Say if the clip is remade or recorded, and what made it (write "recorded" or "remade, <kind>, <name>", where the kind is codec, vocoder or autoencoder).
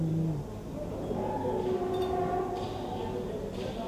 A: recorded